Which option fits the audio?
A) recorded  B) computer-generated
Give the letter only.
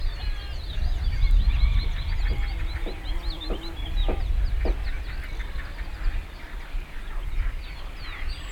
A